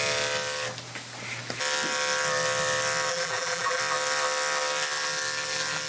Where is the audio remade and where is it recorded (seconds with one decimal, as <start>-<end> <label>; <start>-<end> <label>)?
0.0-3.1 recorded; 3.1-3.8 remade; 3.8-5.9 recorded